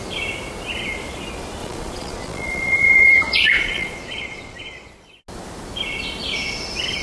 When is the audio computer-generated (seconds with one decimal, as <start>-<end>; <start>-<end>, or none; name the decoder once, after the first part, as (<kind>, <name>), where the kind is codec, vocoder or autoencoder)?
1.6-5.2 (vocoder, Vocos)